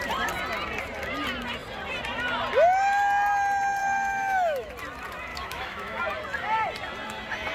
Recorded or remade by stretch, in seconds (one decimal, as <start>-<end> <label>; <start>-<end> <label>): 0.0-3.8 recorded; 3.8-4.7 remade; 4.7-5.3 recorded; 5.3-6.0 remade; 6.0-7.5 recorded